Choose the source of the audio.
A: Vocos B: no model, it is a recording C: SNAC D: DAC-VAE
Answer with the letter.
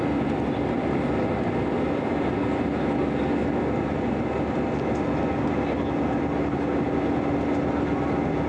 B